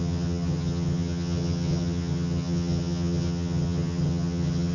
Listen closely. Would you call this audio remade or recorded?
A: remade